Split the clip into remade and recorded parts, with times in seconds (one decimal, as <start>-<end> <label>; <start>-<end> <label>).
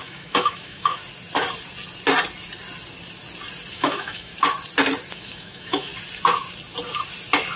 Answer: 0.0-1.0 remade; 1.0-3.7 recorded; 3.7-4.3 remade; 4.3-5.1 recorded; 5.1-5.9 remade; 5.9-7.6 recorded